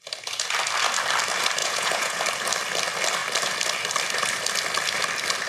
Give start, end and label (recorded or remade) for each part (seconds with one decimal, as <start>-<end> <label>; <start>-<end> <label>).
0.0-1.6 recorded; 1.6-2.2 remade; 2.2-5.5 recorded